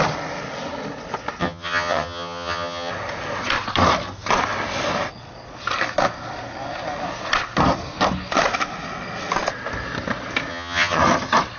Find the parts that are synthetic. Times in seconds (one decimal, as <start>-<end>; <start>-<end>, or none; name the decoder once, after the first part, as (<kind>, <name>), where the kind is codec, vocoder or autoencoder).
1.4-2.9 (vocoder, HiFi-GAN); 10.5-11.0